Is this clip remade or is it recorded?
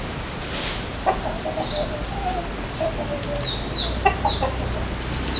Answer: recorded